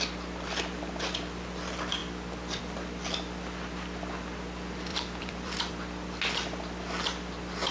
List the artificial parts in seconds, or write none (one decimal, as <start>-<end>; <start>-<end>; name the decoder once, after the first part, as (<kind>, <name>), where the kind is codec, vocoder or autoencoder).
4.9-5.7 (vocoder, BigVGAN v2)